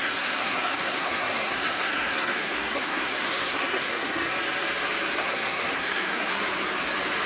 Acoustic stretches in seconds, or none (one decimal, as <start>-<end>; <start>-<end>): 4.3-5.2; 6.4-7.3